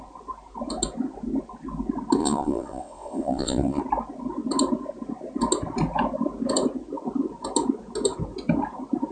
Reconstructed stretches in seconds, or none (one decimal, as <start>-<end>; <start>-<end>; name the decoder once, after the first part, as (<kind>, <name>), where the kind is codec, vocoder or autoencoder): 2.2-3.8 (vocoder, WaveNeXt)